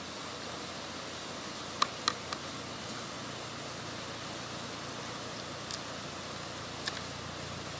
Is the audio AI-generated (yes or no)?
no